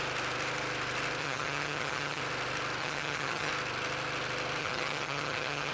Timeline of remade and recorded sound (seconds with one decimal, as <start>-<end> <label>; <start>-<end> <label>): 0.0-1.2 recorded; 1.2-2.2 remade; 2.2-2.8 recorded; 2.8-3.5 remade; 3.5-4.6 recorded; 4.6-5.7 remade